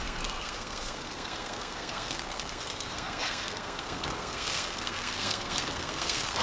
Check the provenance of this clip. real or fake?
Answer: fake